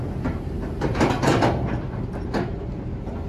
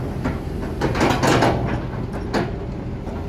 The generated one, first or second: first